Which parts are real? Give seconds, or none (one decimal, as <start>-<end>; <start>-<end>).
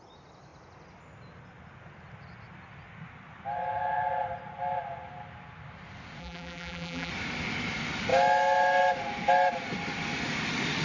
0.0-6.2; 7.1-10.8